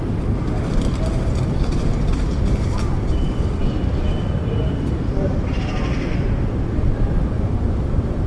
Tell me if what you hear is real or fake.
real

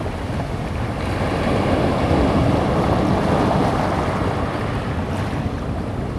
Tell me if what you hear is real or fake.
real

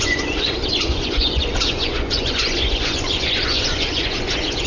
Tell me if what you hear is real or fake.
fake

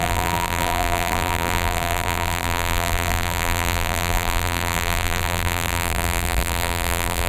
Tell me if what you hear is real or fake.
fake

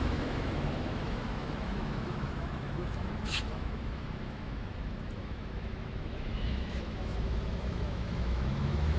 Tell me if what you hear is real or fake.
fake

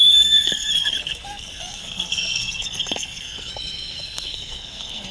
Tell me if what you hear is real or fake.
fake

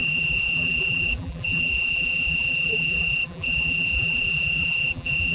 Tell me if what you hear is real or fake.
fake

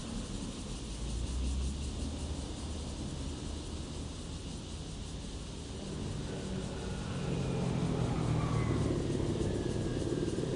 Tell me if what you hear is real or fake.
real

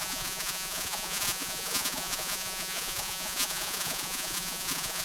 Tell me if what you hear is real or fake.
fake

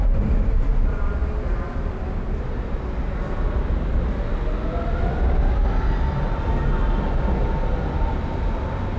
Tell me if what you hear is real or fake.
real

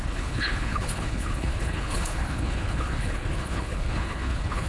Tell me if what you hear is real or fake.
fake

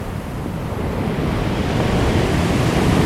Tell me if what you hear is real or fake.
fake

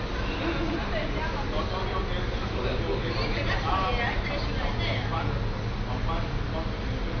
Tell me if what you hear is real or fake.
real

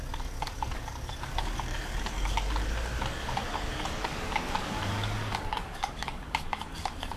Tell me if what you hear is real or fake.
fake